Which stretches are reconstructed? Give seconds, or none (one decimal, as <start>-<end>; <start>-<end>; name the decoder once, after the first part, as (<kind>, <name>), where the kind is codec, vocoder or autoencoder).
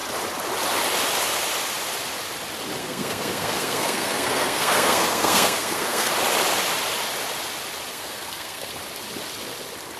2.8-6.1 (codec, SNAC); 7.9-8.7